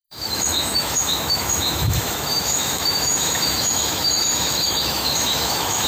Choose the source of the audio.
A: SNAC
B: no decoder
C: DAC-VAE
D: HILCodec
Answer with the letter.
C